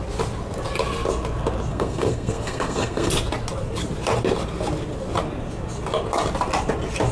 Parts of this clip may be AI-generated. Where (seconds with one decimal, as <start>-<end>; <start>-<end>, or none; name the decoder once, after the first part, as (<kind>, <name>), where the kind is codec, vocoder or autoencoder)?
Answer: 1.7-3.1 (codec, SNAC)